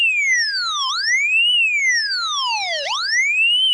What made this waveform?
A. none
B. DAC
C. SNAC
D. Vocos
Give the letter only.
A